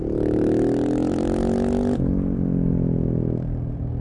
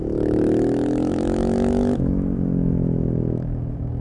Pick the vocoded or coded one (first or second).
second